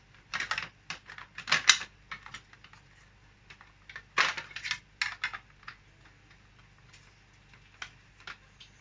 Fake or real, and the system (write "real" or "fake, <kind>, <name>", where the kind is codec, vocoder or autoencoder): real